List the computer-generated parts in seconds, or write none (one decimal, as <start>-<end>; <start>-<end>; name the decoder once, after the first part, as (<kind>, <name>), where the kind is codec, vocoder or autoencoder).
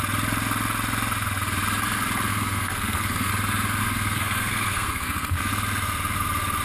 2.3-3.3 (codec, SNAC); 3.8-5.5